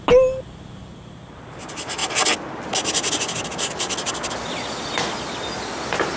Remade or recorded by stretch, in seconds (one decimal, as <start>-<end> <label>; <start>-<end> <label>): 0.0-6.2 recorded